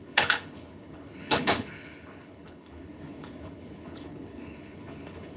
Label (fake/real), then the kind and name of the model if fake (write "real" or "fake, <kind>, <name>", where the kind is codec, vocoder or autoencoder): fake, codec, HILCodec